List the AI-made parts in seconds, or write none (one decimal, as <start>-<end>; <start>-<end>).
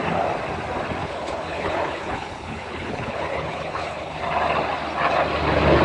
1.0-4.2